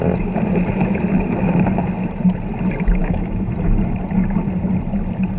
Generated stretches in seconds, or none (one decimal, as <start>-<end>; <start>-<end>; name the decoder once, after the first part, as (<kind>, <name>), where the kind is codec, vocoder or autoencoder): 3.0-3.5 (autoencoder, DAC-VAE)

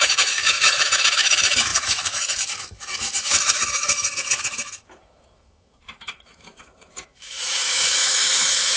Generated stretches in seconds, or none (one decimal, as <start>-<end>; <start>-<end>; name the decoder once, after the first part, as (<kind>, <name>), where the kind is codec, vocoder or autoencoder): 0.0-8.8 (autoencoder, DAC-VAE)

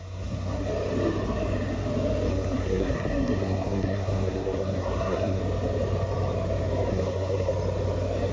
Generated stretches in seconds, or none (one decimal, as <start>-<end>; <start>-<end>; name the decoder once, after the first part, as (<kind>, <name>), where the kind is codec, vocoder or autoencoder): 0.0-0.7 (codec, SNAC); 2.3-5.4; 6.9-7.5

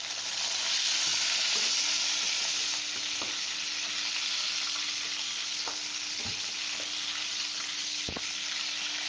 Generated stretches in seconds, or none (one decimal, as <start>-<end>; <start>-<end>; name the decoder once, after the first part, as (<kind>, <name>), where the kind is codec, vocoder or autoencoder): none

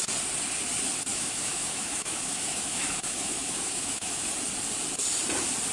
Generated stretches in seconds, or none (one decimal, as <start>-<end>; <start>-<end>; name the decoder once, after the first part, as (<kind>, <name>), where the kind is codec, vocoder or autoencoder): 1.1-4.3 (autoencoder, DAC-VAE)

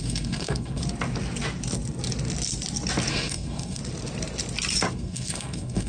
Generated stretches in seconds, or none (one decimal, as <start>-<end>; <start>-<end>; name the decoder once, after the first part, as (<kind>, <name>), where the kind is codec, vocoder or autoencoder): 0.0-0.8 (codec, SNAC); 3.1-3.8; 4.9-5.9